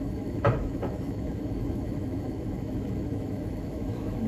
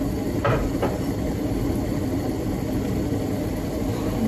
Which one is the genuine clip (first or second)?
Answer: second